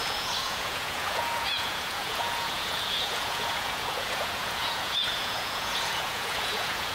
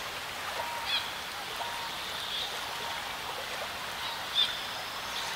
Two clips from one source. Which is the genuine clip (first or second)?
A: second